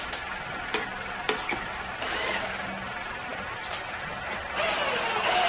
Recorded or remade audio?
recorded